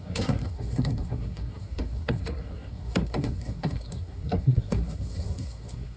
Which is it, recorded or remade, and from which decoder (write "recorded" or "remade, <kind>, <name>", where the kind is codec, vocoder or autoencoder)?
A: remade, codec, SNAC